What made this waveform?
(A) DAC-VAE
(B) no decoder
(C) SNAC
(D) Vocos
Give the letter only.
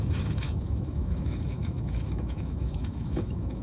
A